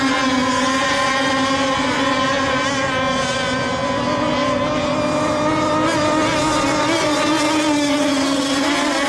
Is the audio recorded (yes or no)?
yes